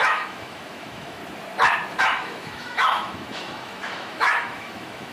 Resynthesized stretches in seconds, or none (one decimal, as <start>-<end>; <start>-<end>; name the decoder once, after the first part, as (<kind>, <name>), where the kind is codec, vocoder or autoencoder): 0.0-1.2 (autoencoder, DAC-VAE); 2.0-5.1